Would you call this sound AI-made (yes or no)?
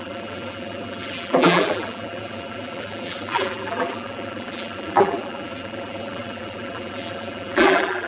yes